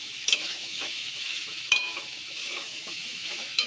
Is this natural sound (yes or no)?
no